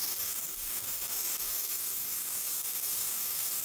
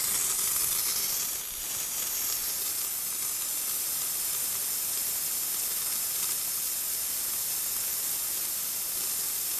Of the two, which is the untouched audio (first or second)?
second